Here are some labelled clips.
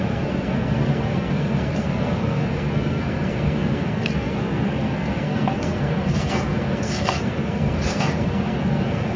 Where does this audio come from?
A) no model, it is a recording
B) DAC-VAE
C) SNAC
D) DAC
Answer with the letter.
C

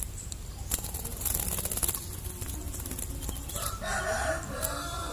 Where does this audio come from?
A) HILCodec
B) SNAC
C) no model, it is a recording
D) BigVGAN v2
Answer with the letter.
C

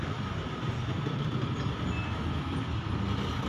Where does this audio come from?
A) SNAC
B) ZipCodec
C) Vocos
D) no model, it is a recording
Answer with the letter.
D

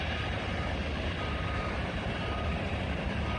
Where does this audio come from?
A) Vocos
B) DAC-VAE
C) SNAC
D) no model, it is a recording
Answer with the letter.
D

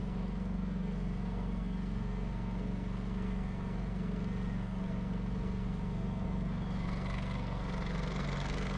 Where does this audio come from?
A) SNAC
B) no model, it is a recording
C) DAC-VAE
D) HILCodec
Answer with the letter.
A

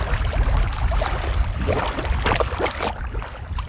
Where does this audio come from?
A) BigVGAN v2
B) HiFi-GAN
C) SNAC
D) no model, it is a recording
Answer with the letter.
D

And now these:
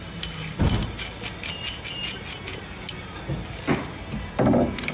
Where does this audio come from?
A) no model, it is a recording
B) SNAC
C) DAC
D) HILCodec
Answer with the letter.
A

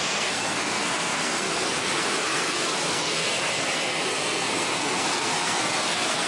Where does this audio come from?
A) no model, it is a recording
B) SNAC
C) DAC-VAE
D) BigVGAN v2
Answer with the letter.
B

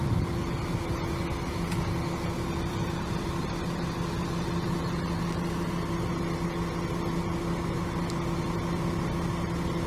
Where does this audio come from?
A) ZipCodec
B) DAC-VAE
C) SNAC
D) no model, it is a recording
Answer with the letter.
D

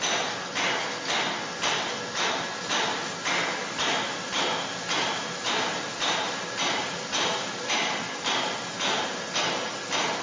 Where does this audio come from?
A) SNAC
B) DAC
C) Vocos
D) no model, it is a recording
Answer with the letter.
D